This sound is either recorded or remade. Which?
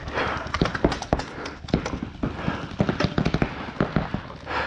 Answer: recorded